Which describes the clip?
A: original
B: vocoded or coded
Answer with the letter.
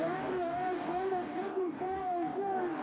B